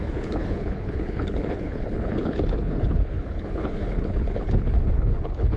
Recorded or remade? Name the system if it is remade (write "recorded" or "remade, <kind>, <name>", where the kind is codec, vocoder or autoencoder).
remade, codec, HILCodec